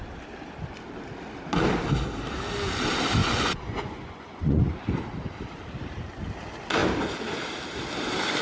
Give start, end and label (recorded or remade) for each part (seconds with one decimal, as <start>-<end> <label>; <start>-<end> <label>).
0.0-3.2 recorded; 3.2-4.8 remade; 4.8-8.4 recorded